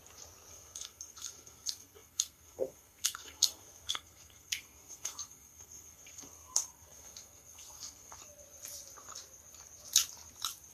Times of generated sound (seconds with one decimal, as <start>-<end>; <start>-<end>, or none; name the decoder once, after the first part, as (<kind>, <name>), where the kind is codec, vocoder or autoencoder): 0.5-8.2 (codec, SNAC)